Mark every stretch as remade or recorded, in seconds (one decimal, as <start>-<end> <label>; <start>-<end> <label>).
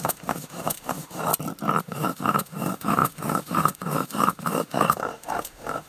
0.0-1.3 remade; 1.3-1.8 recorded; 1.8-5.9 remade